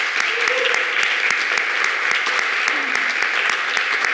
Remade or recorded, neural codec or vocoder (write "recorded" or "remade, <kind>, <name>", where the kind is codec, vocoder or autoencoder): recorded